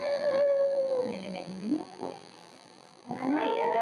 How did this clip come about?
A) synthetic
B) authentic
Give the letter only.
A